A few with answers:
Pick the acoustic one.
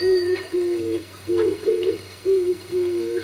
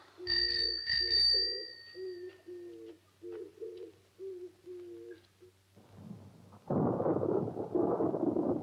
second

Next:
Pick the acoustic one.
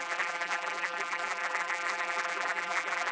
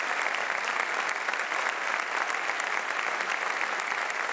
second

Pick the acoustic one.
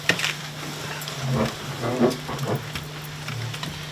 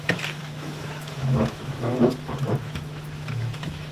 first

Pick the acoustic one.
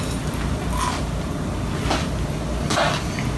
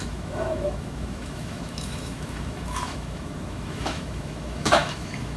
first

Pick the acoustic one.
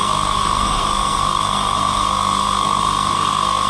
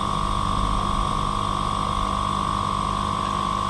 second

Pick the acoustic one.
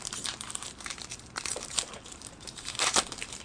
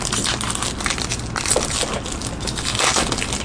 second